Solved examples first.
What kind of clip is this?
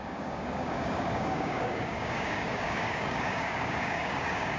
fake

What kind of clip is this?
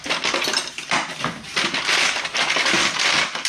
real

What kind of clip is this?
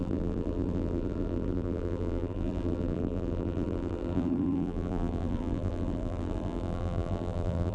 fake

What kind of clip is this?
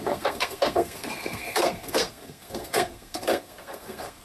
fake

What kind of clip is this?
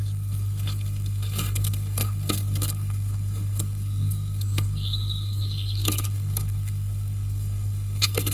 fake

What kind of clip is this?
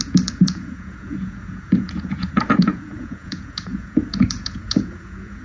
fake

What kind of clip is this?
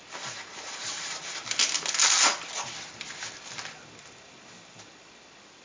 real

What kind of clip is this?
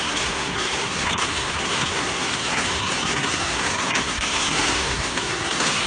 fake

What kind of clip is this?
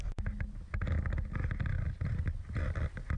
real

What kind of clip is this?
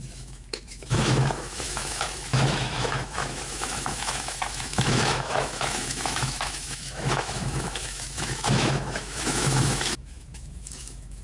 fake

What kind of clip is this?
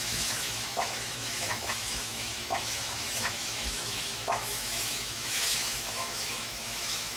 fake